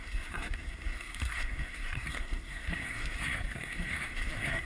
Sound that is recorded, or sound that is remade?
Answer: remade